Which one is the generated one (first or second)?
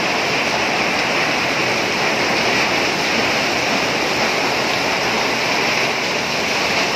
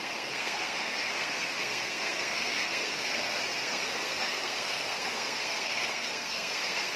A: second